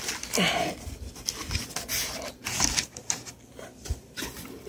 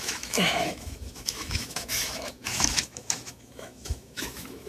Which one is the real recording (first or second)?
first